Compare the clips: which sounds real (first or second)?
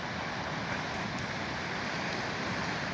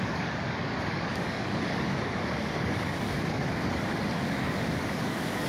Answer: first